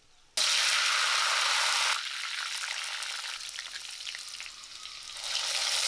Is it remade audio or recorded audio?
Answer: recorded